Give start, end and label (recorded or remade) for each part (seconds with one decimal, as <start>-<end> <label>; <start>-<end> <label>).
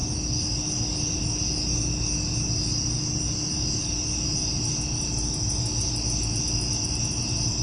0.0-7.6 recorded